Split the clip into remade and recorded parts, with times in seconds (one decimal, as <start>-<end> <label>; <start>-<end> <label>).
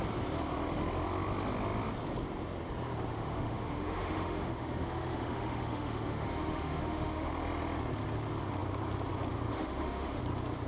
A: 0.0-3.1 recorded; 3.1-7.3 remade; 7.3-9.5 recorded; 9.5-10.2 remade; 10.2-10.7 recorded